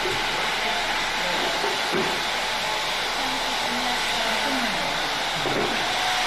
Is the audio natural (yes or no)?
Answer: yes